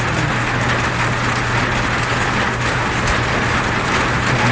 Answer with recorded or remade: recorded